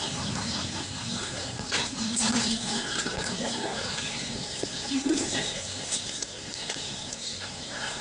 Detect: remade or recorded remade